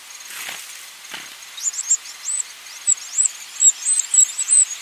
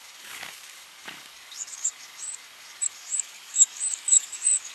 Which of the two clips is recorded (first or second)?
first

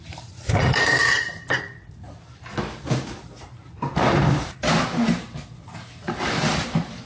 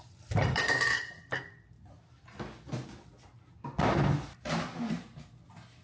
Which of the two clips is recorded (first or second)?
second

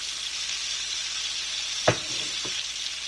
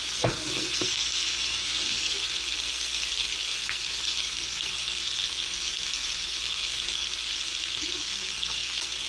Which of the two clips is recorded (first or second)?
first